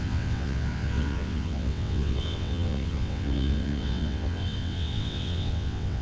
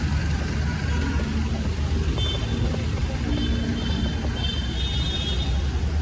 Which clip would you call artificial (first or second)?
first